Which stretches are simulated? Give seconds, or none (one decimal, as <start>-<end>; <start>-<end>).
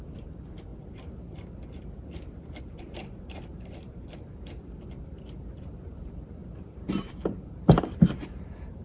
0.0-0.7; 2.6-8.8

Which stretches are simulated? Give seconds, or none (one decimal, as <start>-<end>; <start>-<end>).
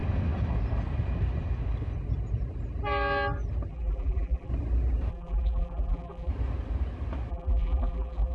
3.7-4.5; 5.1-6.3; 7.3-8.3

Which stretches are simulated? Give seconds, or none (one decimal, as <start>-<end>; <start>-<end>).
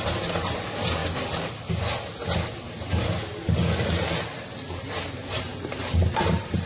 5.5-6.7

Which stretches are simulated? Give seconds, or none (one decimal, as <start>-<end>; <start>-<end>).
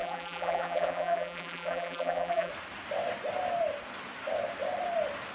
0.0-2.5